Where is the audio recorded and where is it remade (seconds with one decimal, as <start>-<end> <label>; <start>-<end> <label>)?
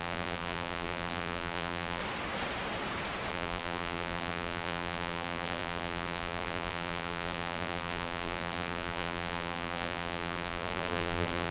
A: 0.0-2.0 remade; 2.0-3.3 recorded; 3.3-11.5 remade